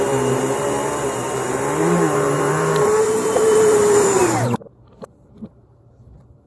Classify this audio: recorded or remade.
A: remade